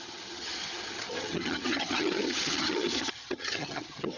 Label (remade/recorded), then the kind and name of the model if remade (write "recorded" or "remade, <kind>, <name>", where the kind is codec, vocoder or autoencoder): remade, vocoder, HiFi-GAN